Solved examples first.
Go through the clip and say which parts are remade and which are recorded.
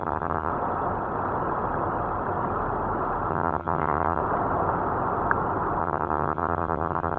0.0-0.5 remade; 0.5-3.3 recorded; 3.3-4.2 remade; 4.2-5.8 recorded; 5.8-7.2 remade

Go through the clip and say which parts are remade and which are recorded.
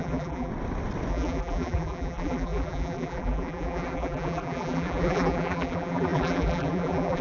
0.0-0.5 remade; 0.5-1.1 recorded; 1.1-7.2 remade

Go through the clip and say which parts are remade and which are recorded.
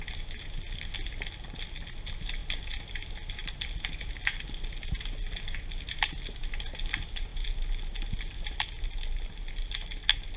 0.0-10.4 recorded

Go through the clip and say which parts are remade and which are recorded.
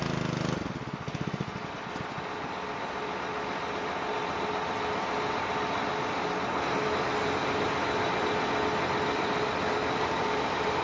0.0-10.8 recorded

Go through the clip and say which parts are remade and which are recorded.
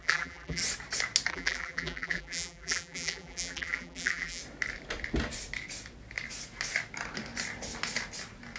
0.0-0.6 remade; 0.6-1.3 recorded; 1.3-4.4 remade; 4.4-8.6 recorded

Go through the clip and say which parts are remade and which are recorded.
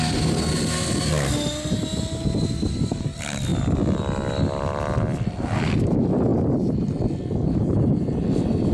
0.0-8.7 recorded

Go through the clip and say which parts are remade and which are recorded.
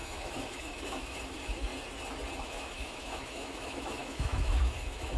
0.0-1.7 remade; 1.7-2.4 recorded; 2.4-5.2 remade